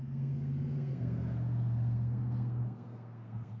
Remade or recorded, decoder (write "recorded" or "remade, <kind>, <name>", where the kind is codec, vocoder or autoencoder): remade, codec, SNAC